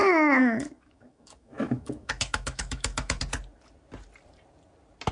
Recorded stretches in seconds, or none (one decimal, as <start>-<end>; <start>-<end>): 0.0-0.4; 3.2-5.1